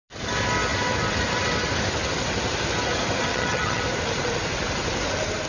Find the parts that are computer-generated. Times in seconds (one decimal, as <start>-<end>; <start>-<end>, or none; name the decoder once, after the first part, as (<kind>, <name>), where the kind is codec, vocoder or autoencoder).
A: 3.3-3.8 (vocoder, HiFi-GAN)